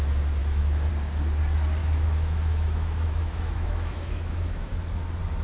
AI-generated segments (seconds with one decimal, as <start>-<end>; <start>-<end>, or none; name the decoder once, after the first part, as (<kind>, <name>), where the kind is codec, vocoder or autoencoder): 0.4-0.9 (autoencoder, DAC-VAE); 1.8-5.0